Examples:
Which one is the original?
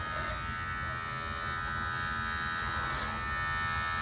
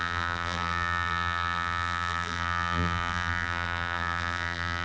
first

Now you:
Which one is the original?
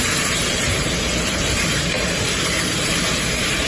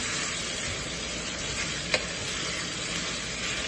second